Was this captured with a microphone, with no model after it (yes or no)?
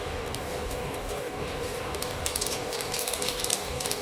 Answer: no